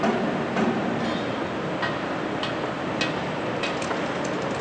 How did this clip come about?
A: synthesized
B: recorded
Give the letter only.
B